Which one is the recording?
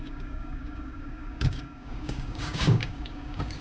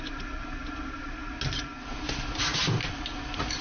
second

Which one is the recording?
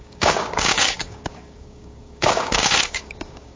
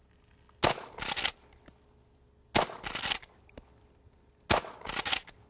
second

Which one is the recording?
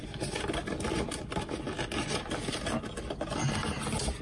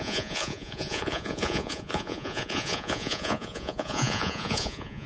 first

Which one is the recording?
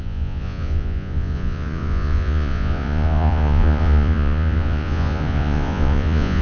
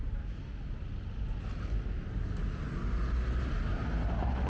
second